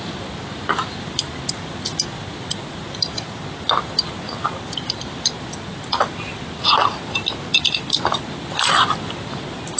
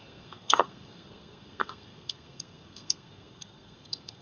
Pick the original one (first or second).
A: first